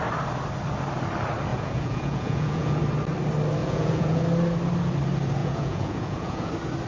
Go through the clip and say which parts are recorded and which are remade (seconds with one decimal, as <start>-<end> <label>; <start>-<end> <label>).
0.0-1.5 recorded; 1.5-2.8 remade; 2.8-3.6 recorded; 3.6-4.2 remade; 4.2-5.4 recorded; 5.4-6.5 remade; 6.5-6.9 recorded